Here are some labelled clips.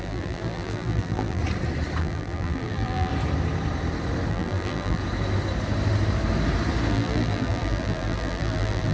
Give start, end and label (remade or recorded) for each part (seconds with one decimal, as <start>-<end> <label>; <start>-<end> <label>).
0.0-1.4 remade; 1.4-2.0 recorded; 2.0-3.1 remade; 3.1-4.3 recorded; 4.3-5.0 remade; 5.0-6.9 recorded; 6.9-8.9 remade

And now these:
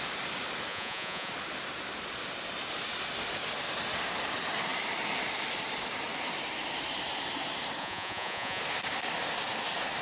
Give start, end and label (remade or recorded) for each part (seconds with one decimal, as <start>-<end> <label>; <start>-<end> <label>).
0.0-0.7 recorded; 0.7-1.3 remade; 1.3-7.8 recorded; 7.8-8.6 remade; 8.6-10.0 recorded

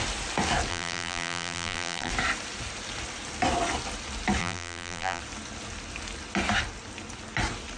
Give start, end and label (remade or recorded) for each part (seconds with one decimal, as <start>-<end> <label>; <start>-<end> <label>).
0.0-0.7 recorded; 0.7-2.1 remade; 2.1-4.4 recorded; 4.4-5.2 remade; 5.2-7.8 recorded

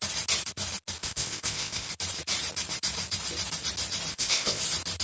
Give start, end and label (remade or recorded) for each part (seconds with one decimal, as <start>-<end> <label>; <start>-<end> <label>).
0.0-1.0 recorded; 1.0-1.9 remade; 1.9-4.1 recorded; 4.1-4.6 remade; 4.6-5.0 recorded

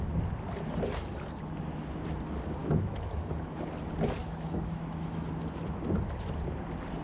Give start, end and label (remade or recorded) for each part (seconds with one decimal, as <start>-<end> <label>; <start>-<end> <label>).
0.0-2.6 recorded; 2.6-3.6 remade; 3.6-4.2 recorded; 4.2-5.3 remade; 5.3-7.0 recorded